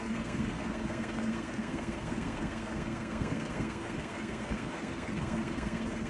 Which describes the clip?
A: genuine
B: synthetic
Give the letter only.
B